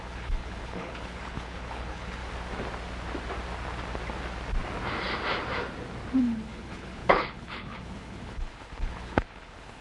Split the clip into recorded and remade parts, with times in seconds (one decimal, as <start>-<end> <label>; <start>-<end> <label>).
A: 0.0-2.2 remade; 2.2-6.2 recorded; 6.2-9.8 remade